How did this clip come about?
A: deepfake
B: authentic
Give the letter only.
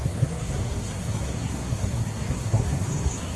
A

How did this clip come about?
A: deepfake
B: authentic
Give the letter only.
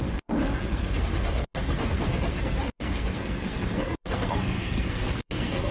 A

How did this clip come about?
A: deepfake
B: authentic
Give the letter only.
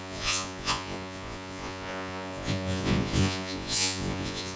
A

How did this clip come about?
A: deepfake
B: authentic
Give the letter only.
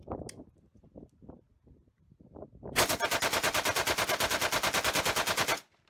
B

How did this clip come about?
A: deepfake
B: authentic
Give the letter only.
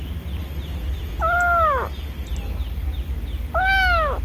B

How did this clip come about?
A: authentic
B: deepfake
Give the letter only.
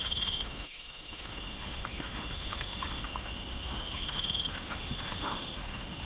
B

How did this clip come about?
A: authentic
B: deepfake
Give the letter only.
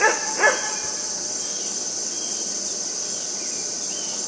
A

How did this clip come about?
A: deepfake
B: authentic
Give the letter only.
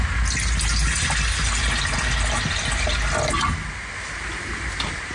B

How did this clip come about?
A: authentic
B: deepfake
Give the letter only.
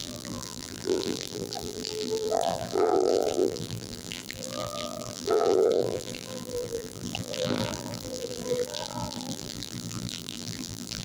B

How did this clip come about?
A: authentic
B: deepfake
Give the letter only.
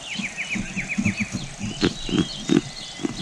A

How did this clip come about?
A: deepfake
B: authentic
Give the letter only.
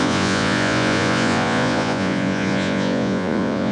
A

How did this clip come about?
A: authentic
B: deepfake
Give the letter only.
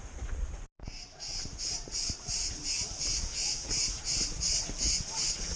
B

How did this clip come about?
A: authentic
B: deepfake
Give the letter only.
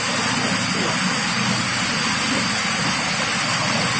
A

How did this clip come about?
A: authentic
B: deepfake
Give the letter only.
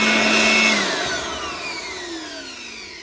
A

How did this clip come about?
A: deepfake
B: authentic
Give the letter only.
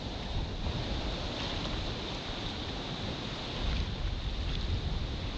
B